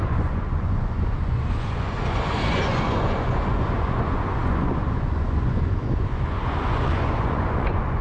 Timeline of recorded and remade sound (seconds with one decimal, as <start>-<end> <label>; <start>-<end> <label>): 0.0-8.0 remade